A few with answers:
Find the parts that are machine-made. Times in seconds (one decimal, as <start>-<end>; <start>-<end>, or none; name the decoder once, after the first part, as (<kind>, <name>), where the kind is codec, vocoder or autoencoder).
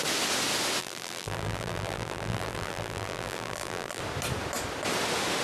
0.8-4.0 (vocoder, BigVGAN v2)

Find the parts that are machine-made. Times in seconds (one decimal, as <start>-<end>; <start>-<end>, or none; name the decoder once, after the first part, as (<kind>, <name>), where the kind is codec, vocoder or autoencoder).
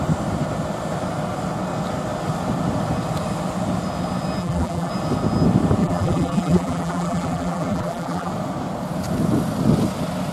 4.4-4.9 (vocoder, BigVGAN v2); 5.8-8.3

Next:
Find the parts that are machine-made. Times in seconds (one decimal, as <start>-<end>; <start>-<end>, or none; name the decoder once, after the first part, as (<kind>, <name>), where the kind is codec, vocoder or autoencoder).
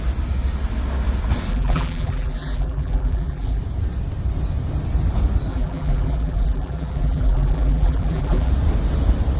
1.5-3.6 (vocoder, BigVGAN v2); 5.5-8.5